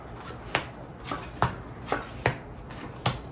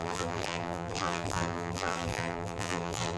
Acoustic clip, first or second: first